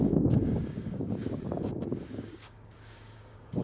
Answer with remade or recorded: remade